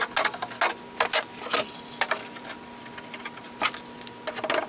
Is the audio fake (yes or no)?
no